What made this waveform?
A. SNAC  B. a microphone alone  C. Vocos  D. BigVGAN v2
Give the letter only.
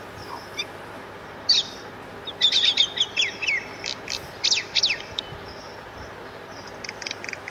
B